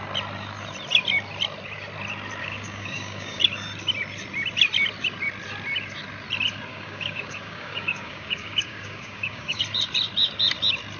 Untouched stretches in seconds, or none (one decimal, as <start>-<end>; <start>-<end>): 0.0-2.4; 3.4-6.7; 9.6-11.0